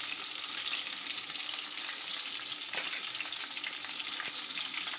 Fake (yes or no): no